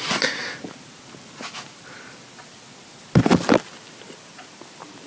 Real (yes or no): yes